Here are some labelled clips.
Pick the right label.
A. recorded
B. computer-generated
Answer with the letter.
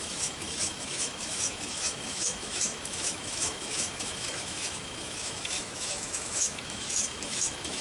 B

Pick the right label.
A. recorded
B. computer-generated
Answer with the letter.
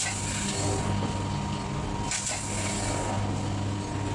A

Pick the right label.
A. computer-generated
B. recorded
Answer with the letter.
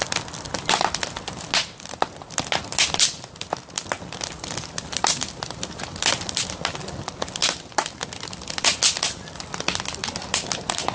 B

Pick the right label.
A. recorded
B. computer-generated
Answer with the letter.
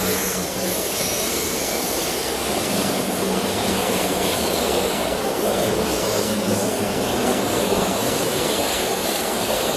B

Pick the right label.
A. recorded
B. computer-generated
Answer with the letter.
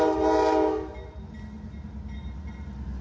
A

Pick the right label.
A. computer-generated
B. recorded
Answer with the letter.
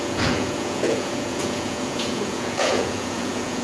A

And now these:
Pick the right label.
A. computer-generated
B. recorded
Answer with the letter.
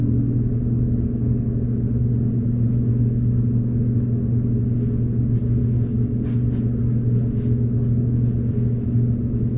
B